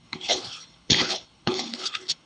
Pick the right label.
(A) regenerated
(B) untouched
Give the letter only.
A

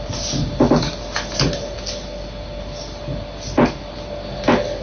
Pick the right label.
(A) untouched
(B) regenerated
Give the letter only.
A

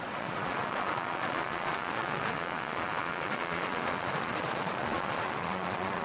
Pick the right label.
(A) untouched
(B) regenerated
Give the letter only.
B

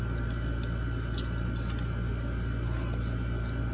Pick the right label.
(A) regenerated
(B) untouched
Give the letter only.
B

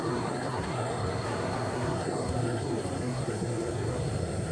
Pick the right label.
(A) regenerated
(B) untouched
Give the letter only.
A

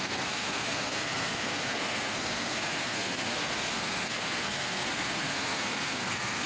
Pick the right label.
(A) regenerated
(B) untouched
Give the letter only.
A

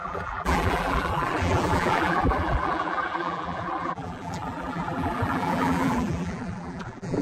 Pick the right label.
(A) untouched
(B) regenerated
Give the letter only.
B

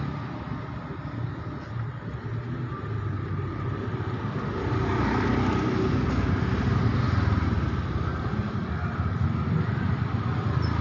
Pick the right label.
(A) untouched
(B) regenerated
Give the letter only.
A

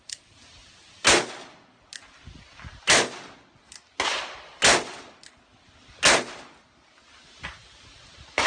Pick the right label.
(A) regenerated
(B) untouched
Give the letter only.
B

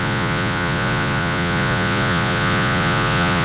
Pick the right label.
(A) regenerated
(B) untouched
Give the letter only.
A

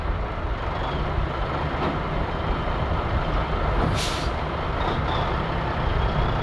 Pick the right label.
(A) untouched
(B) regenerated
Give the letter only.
A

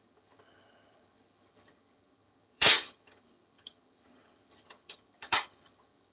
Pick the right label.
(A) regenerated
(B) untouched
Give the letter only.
A